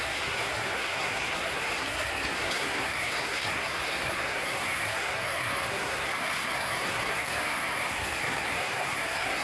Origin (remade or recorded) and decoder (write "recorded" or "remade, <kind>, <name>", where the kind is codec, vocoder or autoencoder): remade, codec, SNAC